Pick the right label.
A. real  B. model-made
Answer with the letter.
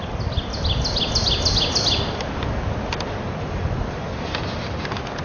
A